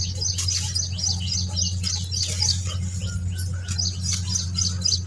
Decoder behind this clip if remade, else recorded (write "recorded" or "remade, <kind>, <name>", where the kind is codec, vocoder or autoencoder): recorded